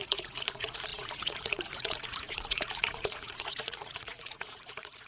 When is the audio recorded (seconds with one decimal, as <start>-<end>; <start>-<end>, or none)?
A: none